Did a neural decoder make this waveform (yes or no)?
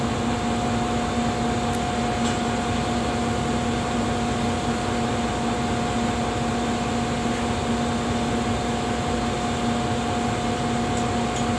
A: no